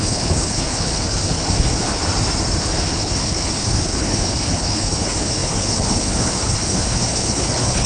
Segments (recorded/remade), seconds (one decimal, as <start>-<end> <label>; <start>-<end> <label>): 0.0-2.0 remade; 2.0-2.6 recorded; 2.6-7.9 remade